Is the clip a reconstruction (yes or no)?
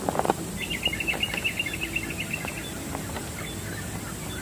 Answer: no